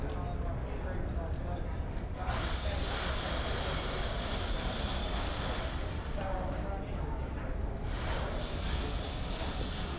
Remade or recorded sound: recorded